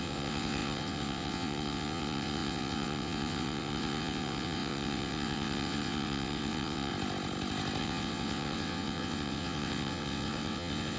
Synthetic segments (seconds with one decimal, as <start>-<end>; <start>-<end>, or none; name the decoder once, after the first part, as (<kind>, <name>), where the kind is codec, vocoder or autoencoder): 0.0-6.9 (vocoder, WaveNeXt); 7.8-11.0